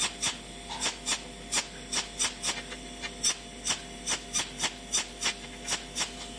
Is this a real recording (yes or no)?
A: yes